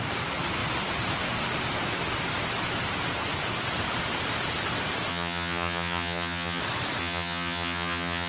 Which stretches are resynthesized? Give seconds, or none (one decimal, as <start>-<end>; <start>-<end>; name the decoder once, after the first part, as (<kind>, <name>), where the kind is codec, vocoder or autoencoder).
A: 5.1-6.6 (vocoder, HiFi-GAN); 7.0-8.3